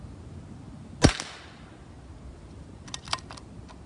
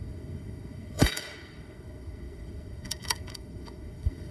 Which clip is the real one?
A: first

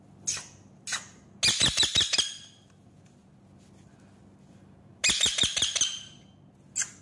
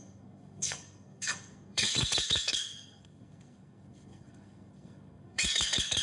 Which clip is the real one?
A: first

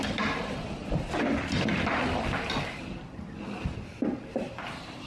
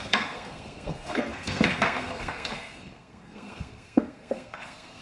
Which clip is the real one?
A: first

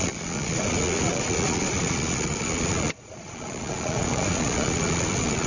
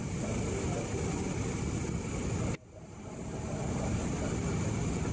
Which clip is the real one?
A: second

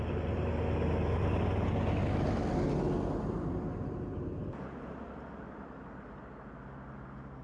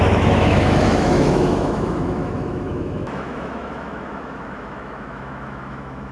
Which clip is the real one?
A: first